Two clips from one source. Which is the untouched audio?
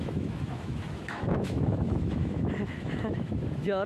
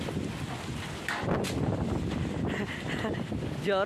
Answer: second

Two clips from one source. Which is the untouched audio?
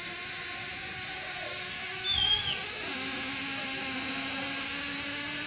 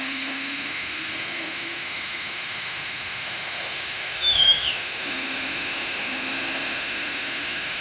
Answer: first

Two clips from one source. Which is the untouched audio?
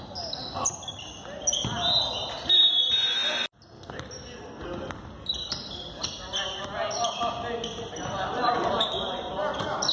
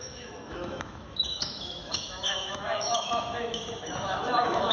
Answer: first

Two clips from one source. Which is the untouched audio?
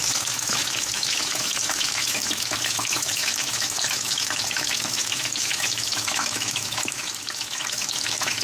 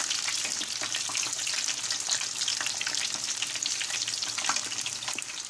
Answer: second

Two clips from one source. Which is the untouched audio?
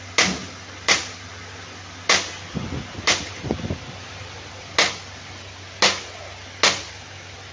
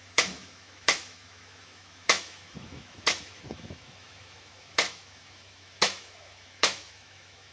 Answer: first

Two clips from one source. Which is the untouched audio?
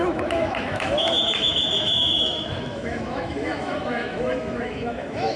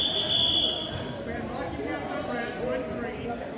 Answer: second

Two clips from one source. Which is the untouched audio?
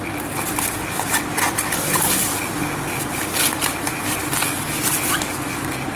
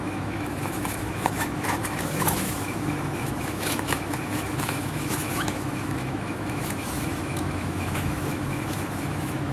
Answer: first